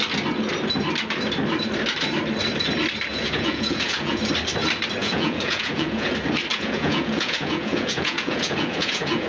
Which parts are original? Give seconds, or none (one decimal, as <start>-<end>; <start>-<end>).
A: 0.0-3.1; 4.2-5.0; 6.1-6.5